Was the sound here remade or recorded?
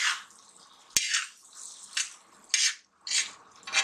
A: recorded